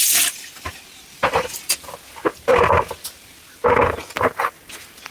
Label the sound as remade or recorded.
recorded